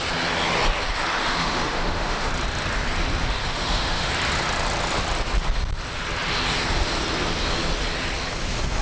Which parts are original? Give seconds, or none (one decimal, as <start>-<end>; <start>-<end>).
0.0-1.2; 2.3-3.4; 4.1-8.8